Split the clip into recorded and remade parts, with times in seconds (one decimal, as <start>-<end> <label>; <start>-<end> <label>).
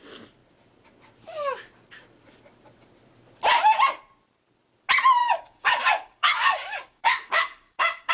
0.0-5.2 recorded; 5.2-8.1 remade